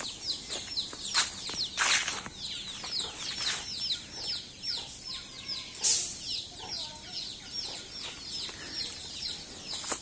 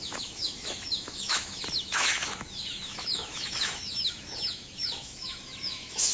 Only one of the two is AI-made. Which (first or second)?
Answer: second